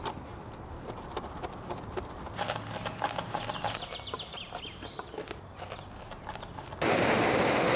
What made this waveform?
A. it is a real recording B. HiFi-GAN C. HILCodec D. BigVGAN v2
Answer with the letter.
A